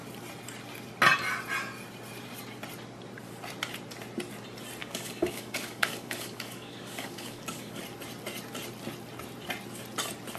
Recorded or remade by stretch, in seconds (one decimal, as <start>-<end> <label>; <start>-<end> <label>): 0.0-4.8 recorded; 4.8-7.8 remade; 7.8-10.4 recorded